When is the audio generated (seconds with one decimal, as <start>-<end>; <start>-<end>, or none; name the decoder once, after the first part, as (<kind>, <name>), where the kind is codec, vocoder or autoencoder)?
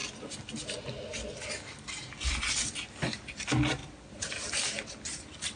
none